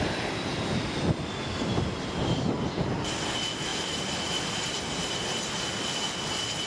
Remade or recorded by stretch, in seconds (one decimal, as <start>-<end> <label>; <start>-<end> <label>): 0.0-6.7 recorded